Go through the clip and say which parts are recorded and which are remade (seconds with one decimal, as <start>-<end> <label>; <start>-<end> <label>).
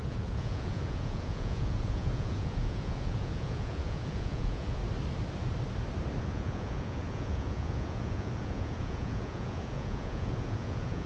0.0-4.8 remade; 4.8-6.2 recorded; 6.2-11.1 remade